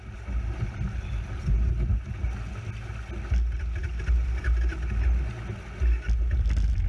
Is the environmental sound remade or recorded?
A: recorded